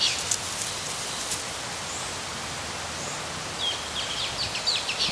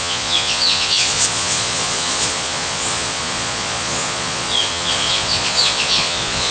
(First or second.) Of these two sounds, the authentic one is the first